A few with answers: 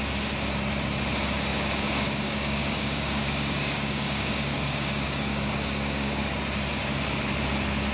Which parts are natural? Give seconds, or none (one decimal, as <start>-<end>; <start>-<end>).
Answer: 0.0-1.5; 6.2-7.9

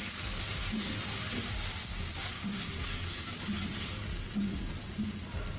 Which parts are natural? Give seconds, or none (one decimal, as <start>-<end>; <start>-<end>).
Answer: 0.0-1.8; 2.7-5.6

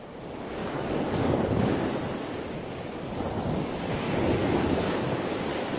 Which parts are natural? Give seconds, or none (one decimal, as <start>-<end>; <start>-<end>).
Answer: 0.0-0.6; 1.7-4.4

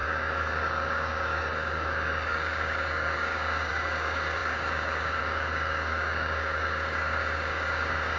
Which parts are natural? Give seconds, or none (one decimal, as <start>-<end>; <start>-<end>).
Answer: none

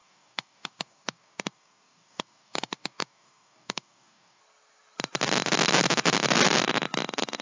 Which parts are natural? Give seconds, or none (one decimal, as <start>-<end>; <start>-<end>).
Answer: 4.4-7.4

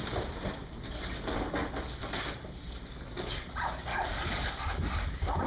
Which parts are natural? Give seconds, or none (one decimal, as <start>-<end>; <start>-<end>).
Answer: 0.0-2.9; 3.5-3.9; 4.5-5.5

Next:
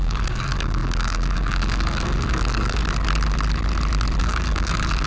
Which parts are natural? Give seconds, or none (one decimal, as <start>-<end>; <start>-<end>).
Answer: 2.8-4.2